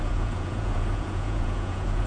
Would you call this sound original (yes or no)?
no